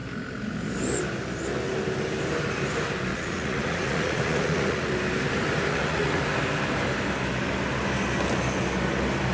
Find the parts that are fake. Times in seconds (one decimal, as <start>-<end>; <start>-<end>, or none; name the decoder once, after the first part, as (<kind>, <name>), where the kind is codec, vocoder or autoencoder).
3.1-4.9 (vocoder, Vocos); 5.7-6.2

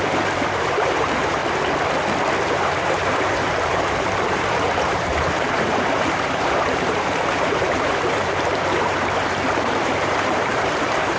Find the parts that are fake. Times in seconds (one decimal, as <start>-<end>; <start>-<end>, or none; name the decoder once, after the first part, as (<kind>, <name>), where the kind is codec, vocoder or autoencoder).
0.0-1.4 (vocoder, BigVGAN v2); 2.6-11.2

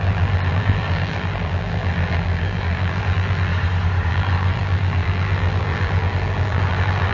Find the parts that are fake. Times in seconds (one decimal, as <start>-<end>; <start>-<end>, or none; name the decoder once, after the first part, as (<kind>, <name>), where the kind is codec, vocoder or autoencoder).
0.0-3.5 (vocoder, BigVGAN v2); 4.1-7.1